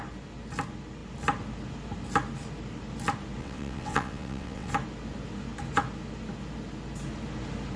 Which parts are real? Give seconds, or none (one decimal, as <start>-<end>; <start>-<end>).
0.0-3.4; 4.7-7.8